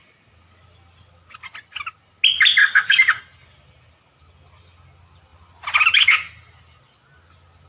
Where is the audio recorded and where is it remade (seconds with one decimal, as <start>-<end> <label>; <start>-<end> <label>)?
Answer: 0.0-2.6 recorded; 2.6-3.2 remade; 3.2-7.7 recorded